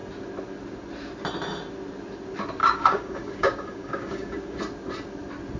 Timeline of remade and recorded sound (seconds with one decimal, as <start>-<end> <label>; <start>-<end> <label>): 0.0-2.6 recorded; 2.6-4.6 remade; 4.6-5.6 recorded